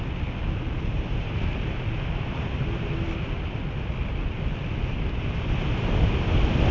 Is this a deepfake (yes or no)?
no